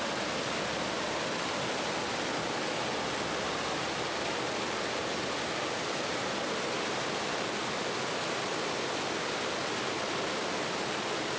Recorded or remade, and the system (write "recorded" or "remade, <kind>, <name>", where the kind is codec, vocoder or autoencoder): recorded